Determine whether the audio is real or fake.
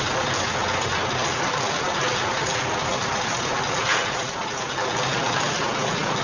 real